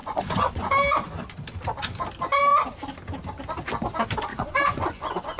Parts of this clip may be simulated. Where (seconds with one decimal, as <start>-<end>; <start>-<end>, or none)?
0.0-0.7; 4.3-5.4